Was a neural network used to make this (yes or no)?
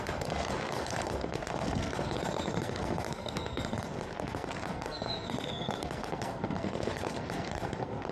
yes